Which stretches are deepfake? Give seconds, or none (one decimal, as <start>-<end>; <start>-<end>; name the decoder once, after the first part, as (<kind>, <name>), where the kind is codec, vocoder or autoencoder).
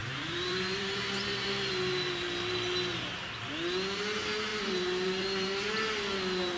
0.0-1.7 (vocoder, BigVGAN v2); 2.9-3.4; 4.5-5.7